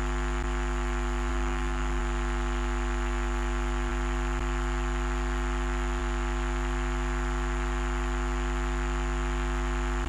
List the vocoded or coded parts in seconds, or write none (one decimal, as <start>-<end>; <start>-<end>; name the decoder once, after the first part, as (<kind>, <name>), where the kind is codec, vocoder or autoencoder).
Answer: 1.3-2.0 (codec, DAC)